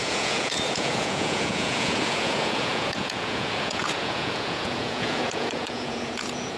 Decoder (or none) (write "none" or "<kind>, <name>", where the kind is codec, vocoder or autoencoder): vocoder, Vocos